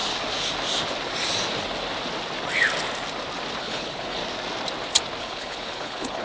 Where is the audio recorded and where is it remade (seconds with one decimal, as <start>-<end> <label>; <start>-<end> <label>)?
0.0-3.6 recorded; 3.6-4.2 remade; 4.2-5.2 recorded; 5.2-6.2 remade